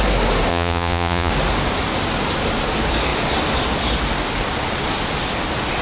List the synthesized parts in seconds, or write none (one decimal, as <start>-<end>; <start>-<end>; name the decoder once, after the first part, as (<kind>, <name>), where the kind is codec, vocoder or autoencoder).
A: 0.5-1.3 (vocoder, Vocos)